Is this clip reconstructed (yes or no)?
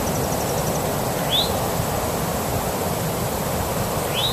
no